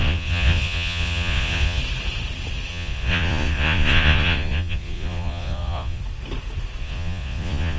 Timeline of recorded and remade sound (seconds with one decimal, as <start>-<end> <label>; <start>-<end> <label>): 0.0-1.8 remade; 1.8-2.7 recorded; 2.7-6.0 remade; 6.0-6.8 recorded; 6.8-7.8 remade